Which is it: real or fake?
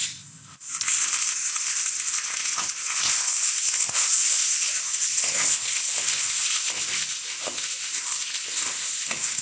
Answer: fake